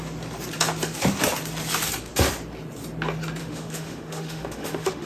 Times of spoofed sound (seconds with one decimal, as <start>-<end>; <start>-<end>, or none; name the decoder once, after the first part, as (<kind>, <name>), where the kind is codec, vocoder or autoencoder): 3.4-5.1 (autoencoder, DAC-VAE)